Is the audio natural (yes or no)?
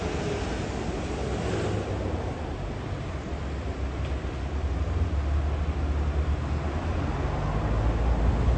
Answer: yes